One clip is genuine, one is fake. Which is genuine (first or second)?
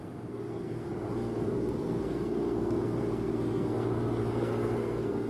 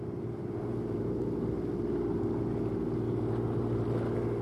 second